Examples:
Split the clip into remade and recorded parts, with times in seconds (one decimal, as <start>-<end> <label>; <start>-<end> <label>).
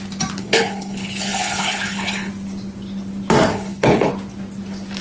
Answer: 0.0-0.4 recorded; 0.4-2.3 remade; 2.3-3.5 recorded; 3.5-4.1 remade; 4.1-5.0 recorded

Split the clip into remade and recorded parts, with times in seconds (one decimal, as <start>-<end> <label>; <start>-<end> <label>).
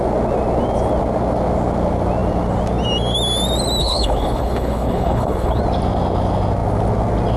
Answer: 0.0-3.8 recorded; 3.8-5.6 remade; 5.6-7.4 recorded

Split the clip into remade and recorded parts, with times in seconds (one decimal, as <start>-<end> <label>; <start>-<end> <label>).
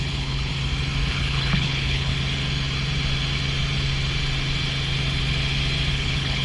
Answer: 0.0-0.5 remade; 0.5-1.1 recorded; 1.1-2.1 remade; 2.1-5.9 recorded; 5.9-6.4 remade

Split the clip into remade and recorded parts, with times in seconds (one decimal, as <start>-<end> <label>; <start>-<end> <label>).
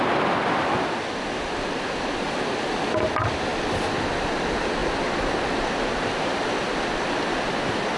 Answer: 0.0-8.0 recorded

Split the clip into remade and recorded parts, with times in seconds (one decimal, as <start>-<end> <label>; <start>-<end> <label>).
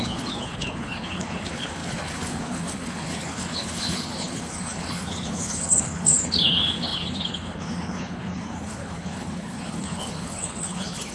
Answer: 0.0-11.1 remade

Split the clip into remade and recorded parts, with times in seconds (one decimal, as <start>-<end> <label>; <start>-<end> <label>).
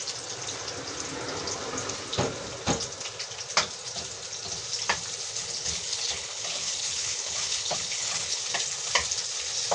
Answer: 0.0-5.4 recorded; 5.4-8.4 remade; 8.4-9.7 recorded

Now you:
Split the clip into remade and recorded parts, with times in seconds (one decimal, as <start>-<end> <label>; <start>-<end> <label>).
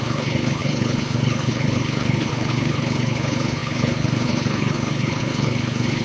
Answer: 0.0-6.0 remade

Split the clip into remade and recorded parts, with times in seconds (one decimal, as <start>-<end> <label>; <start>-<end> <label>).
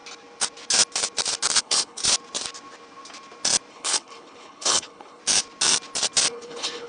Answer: 0.0-1.6 recorded; 1.6-2.0 remade; 2.0-3.7 recorded; 3.7-5.2 remade; 5.2-6.3 recorded; 6.3-6.9 remade